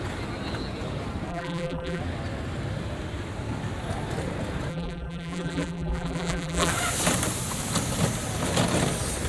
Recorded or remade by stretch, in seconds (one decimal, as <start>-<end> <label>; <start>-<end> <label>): 0.0-1.3 recorded; 1.3-2.0 remade; 2.0-4.7 recorded; 4.7-6.7 remade; 6.7-9.3 recorded